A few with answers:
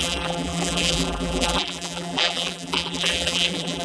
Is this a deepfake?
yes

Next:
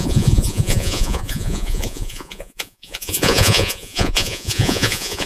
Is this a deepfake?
yes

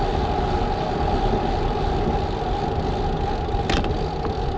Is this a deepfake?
no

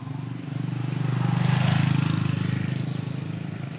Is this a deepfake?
no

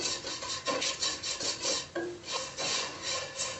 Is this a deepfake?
yes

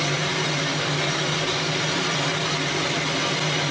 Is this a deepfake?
no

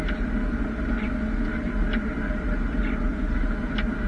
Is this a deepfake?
no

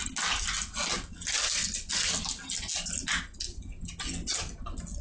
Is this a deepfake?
no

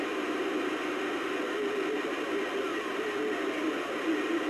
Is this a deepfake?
no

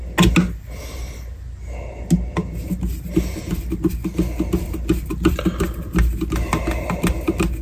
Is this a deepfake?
no